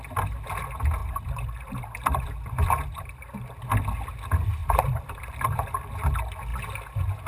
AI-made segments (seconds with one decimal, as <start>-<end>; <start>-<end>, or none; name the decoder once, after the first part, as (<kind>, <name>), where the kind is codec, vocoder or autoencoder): 1.0-3.5 (vocoder, BigVGAN v2); 4.6-5.9